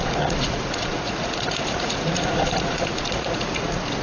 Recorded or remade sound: remade